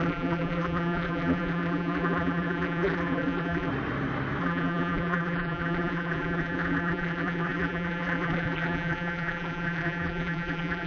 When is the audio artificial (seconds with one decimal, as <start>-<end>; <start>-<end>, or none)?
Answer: 0.0-3.7; 4.4-10.9